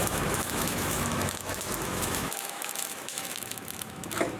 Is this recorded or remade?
remade